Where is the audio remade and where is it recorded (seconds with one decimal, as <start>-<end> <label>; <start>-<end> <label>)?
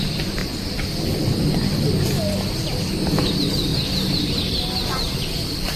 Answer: 0.0-5.8 recorded